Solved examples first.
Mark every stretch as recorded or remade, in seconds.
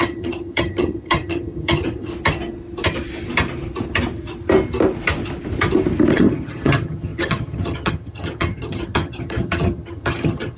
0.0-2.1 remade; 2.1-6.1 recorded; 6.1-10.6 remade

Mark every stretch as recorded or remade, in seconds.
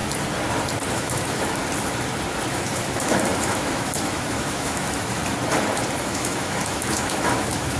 0.0-0.9 recorded; 0.9-1.6 remade; 1.6-2.5 recorded; 2.5-5.2 remade; 5.2-6.0 recorded; 6.0-7.8 remade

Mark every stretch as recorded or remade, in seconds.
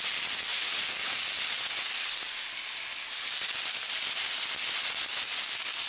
0.0-0.5 recorded; 0.5-1.2 remade; 1.2-5.9 recorded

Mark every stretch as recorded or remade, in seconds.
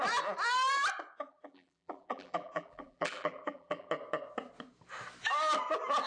0.0-1.3 recorded; 1.3-3.9 remade; 3.9-6.1 recorded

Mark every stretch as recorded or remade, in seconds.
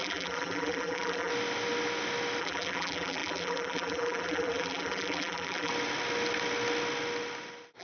0.0-1.3 remade; 1.3-2.4 recorded; 2.4-5.7 remade; 5.7-7.8 recorded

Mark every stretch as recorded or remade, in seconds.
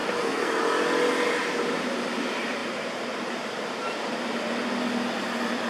0.0-0.6 remade; 0.6-5.7 recorded